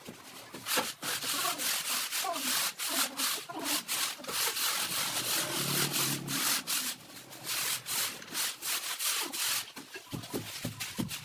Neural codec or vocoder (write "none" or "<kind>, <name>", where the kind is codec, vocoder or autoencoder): none